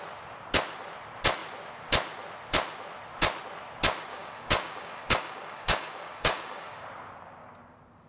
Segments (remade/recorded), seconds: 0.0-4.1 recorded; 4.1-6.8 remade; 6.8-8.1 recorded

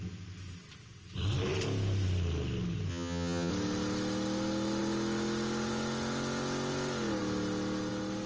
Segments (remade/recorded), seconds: 0.0-2.9 recorded; 2.9-3.5 remade; 3.5-8.3 recorded

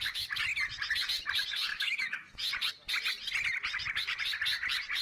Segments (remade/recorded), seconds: 0.0-1.7 recorded; 1.7-2.5 remade; 2.5-5.0 recorded

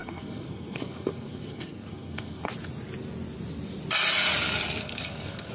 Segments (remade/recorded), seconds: 0.0-2.5 remade; 2.5-4.8 recorded; 4.8-5.5 remade

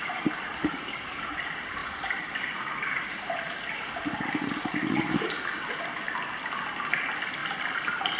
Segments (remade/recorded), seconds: 0.0-8.2 recorded

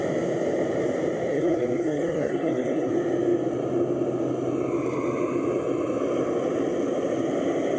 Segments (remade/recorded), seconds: 0.0-1.3 recorded; 1.3-2.9 remade; 2.9-7.8 recorded